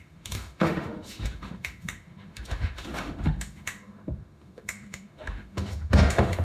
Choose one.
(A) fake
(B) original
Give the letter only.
A